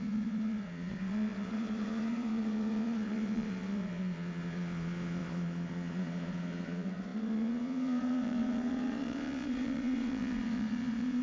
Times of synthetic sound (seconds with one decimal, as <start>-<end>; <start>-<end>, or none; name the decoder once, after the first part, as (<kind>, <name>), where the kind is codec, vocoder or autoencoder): 0.0-11.2 (vocoder, Vocos)